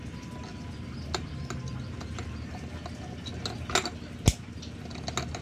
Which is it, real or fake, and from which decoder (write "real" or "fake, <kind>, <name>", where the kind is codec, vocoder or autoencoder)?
real